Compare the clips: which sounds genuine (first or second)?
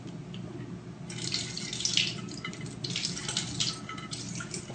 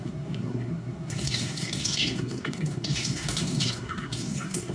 first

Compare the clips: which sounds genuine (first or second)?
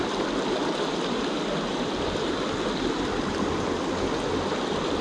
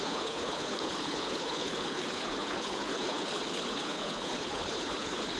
first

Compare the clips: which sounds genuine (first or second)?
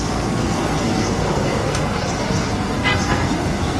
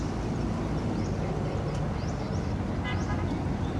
second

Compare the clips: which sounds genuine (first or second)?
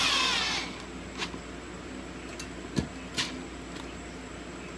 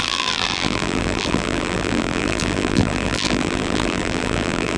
first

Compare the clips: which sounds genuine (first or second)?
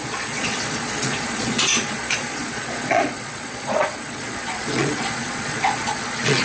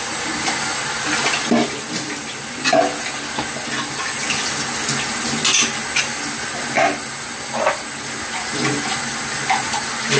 second